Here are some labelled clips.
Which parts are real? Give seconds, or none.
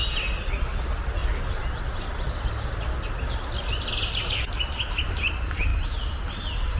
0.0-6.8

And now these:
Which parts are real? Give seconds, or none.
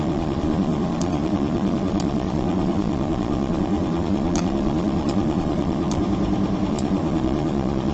6.0-6.7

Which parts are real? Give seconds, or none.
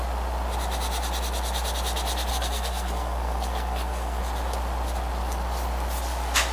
0.0-2.3; 4.2-6.5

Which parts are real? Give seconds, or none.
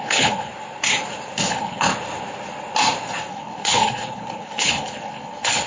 0.5-1.5; 1.9-3.3